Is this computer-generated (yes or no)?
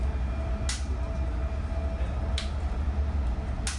no